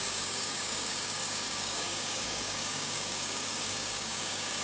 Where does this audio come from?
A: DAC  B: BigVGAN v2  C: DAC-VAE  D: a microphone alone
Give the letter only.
A